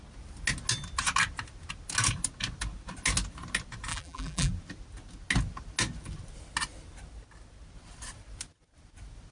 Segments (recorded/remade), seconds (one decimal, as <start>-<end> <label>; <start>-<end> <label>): 0.0-3.9 recorded; 3.9-4.5 remade; 4.5-9.3 recorded